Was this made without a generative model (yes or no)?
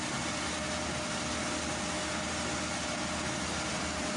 yes